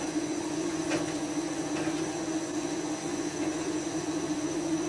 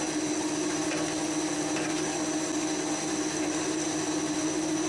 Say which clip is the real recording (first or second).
second